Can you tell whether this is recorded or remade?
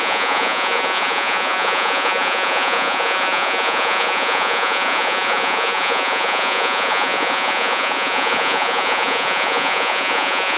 remade